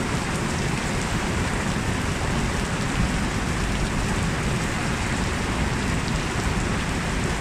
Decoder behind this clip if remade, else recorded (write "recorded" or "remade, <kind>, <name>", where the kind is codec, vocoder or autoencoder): remade, vocoder, BigVGAN v2